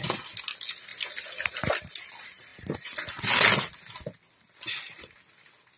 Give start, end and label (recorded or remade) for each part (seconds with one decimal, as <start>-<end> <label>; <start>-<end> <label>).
0.0-5.8 recorded